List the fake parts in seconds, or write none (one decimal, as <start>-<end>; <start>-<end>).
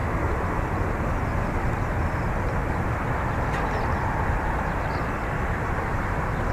0.0-1.1; 2.6-6.5